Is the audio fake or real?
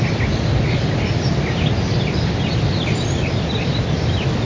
real